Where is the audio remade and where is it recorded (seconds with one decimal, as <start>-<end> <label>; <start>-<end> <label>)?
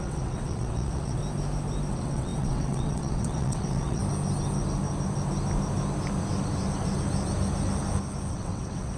0.0-1.2 remade; 1.2-1.9 recorded; 1.9-4.0 remade; 4.0-8.3 recorded; 8.3-9.0 remade